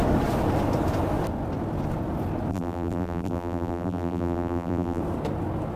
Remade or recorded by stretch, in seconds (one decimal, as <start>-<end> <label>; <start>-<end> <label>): 0.0-2.5 recorded; 2.5-5.0 remade; 5.0-5.8 recorded